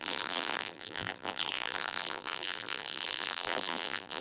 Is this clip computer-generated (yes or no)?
yes